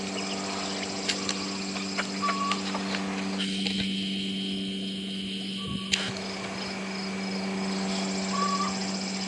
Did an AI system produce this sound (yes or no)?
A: no